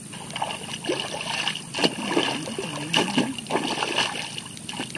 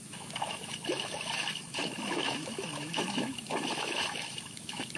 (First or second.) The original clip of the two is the first